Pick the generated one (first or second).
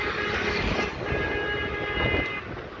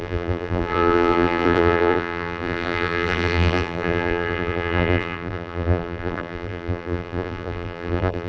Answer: second